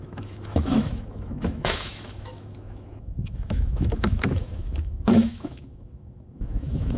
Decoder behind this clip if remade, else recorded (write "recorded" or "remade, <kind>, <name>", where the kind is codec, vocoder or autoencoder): remade, autoencoder, DAC-VAE